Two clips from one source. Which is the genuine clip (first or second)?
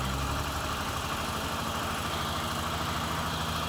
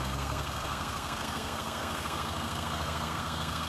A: first